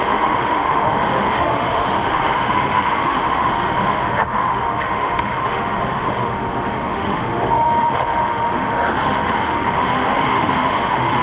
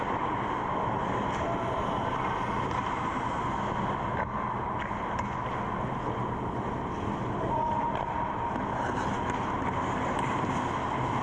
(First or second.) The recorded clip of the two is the second